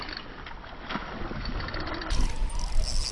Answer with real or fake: real